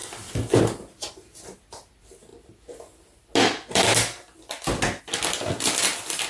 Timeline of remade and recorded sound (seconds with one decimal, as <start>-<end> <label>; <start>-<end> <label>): 0.0-6.3 recorded

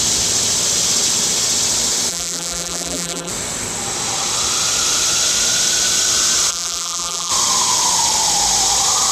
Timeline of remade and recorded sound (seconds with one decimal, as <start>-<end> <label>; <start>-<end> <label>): 0.0-2.1 recorded; 2.1-3.3 remade; 3.3-6.5 recorded; 6.5-7.3 remade; 7.3-9.1 recorded

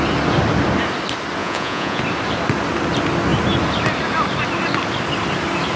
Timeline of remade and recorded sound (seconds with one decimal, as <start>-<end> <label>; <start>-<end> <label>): 0.0-1.4 recorded; 1.4-2.0 remade; 2.0-5.8 recorded

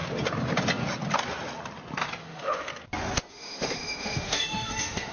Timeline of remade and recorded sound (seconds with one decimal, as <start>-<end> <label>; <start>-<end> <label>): 0.0-2.2 recorded; 2.2-2.7 remade; 2.7-3.3 recorded; 3.3-5.1 remade